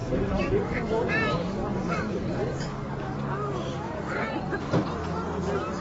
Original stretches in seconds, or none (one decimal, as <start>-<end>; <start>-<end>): 3.1-3.7; 4.3-5.8